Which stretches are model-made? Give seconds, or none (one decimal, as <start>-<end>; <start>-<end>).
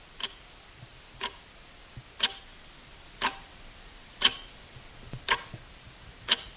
2.5-5.2